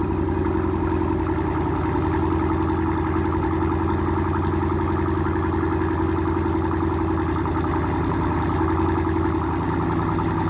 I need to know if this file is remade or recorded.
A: recorded